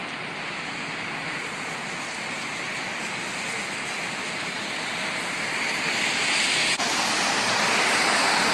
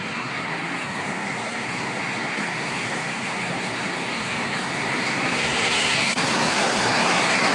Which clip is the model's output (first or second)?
second